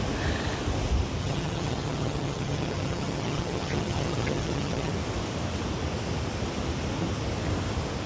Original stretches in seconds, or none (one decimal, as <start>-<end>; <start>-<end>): 0.0-1.2; 4.9-8.1